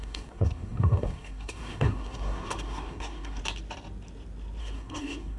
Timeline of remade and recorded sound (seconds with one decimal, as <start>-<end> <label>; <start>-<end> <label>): 0.0-3.4 remade; 3.4-4.6 recorded; 4.6-5.4 remade